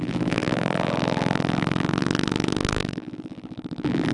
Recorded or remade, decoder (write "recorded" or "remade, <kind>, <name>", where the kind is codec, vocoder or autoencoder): remade, vocoder, BigVGAN v2